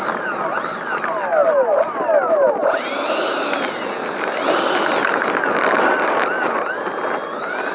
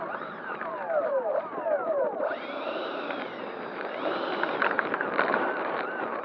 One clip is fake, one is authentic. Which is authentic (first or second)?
first